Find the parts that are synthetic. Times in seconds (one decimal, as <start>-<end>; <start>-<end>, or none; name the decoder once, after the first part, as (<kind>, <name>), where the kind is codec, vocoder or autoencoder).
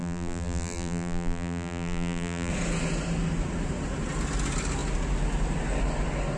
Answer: 0.0-2.5 (vocoder, BigVGAN v2)